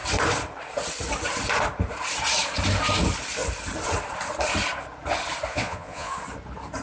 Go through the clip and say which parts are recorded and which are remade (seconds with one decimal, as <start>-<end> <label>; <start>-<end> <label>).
0.0-5.5 recorded; 5.5-6.2 remade; 6.2-6.8 recorded